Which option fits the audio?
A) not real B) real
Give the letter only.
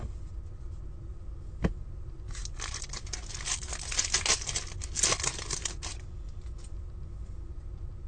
B